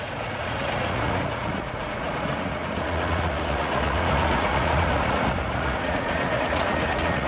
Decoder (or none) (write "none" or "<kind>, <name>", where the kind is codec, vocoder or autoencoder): vocoder, Vocos